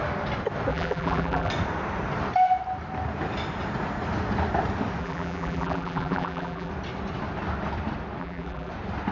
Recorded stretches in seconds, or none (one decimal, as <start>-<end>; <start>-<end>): 0.0-0.7; 1.5-5.0; 6.7-8.2; 8.7-9.1